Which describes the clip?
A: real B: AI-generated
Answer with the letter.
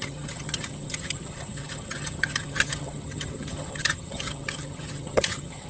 B